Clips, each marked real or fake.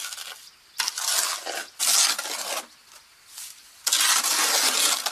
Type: real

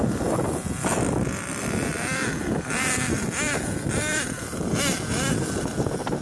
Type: real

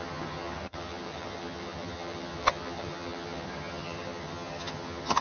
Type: fake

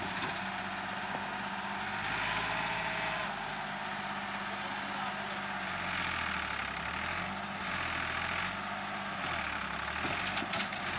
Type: real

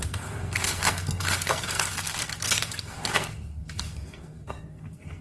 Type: fake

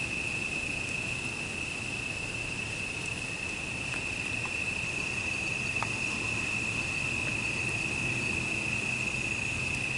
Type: real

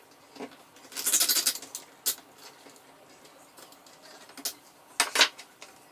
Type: real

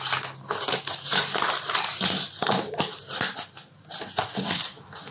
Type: real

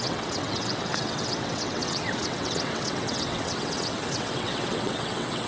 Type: fake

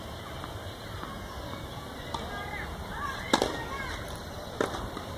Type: real